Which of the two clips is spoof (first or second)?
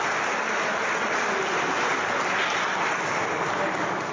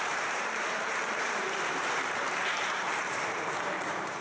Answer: second